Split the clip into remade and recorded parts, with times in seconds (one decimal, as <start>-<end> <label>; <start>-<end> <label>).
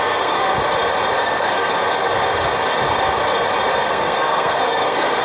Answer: 0.0-0.5 remade; 0.5-1.2 recorded; 1.2-1.7 remade; 1.7-3.9 recorded; 3.9-5.2 remade